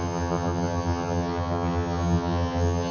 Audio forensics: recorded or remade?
remade